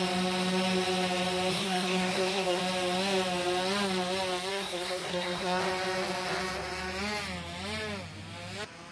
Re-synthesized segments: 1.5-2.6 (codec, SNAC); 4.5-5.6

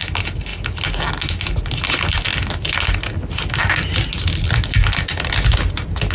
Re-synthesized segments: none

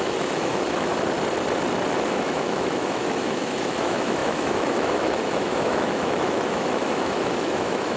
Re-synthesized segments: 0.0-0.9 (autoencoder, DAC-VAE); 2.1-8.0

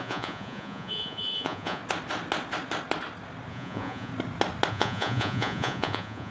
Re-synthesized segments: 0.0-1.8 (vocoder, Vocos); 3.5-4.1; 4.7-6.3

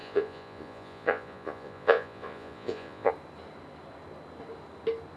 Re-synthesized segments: 0.0-3.1 (vocoder, Vocos)